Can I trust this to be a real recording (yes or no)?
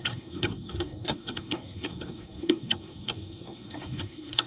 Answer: no